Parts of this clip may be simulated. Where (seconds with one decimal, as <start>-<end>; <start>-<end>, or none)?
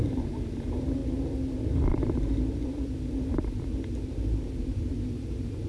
0.0-1.0; 1.6-5.7